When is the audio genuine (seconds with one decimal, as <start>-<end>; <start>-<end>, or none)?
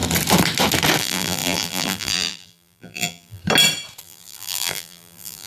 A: 0.0-1.0; 3.4-4.0